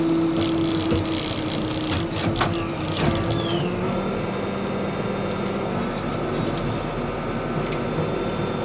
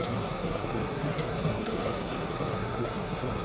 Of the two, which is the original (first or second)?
first